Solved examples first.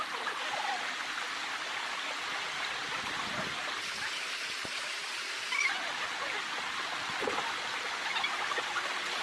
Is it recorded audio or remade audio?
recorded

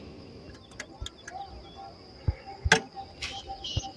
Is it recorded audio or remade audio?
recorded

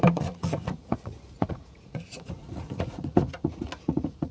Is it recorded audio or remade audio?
remade